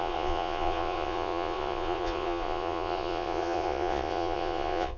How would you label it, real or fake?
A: fake